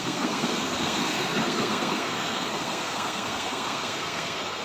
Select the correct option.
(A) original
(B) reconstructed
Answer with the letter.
B